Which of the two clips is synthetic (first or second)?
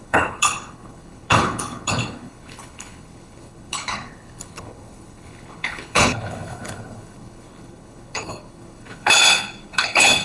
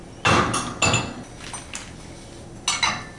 first